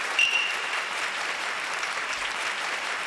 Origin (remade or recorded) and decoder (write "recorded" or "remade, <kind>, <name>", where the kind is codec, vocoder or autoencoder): remade, vocoder, BigVGAN v2